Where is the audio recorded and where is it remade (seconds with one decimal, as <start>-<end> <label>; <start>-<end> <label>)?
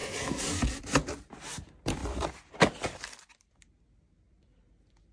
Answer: 0.0-0.8 remade; 0.8-5.1 recorded